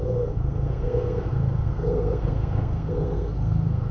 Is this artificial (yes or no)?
yes